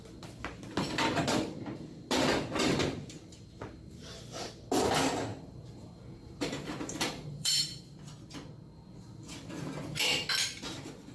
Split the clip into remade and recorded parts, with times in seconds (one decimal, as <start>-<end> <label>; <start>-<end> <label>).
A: 0.0-5.3 recorded; 5.3-8.0 remade; 8.0-11.1 recorded